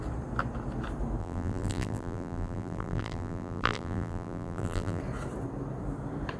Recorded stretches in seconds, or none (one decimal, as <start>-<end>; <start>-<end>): 0.0-1.2; 5.0-6.4